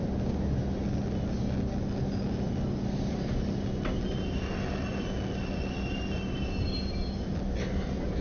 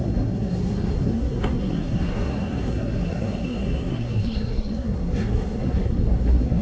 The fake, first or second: second